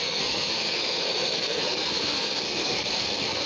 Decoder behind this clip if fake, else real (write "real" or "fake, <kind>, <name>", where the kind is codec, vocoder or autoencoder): fake, codec, SNAC